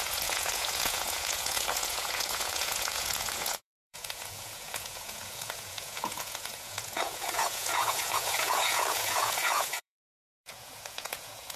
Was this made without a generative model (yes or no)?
no